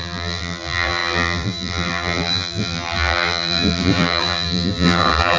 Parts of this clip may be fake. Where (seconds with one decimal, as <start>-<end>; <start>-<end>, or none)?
0.0-5.4